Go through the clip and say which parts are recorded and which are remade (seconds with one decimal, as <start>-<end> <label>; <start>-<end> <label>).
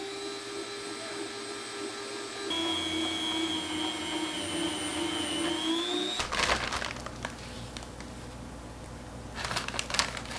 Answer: 0.0-10.4 recorded